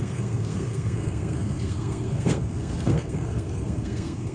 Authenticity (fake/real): fake